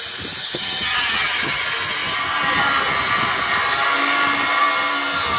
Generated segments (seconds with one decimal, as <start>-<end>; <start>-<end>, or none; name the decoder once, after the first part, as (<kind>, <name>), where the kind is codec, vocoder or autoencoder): 0.4-1.6 (vocoder, HiFi-GAN)